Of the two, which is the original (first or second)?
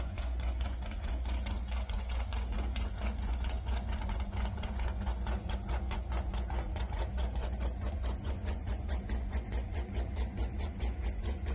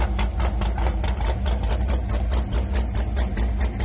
second